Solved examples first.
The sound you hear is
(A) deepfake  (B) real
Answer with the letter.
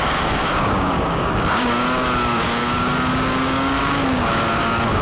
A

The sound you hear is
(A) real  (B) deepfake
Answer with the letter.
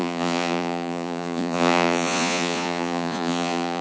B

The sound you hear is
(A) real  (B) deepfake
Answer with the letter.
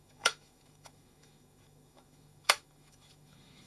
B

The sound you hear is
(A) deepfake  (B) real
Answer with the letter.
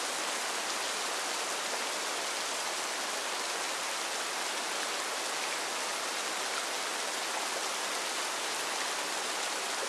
B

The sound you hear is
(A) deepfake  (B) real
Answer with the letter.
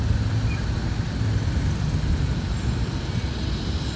B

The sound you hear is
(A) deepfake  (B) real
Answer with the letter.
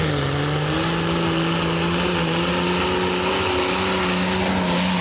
B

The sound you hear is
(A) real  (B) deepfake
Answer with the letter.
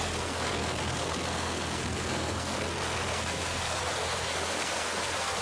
B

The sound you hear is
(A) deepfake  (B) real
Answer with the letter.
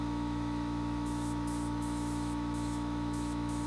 A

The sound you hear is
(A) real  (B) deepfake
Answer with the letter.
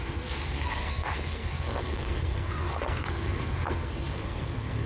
B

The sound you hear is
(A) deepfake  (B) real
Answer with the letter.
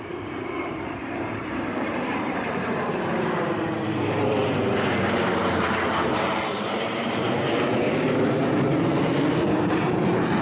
A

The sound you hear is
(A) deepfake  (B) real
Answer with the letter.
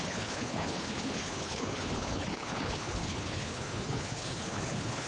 A